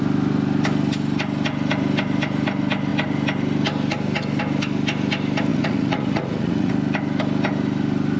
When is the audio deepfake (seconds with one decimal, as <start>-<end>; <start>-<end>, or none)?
5.5-6.7